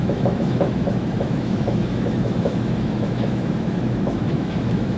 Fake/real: fake